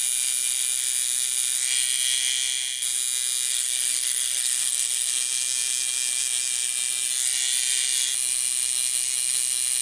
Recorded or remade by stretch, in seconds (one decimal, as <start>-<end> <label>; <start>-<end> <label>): 0.0-3.5 recorded; 3.5-5.1 remade; 5.1-9.8 recorded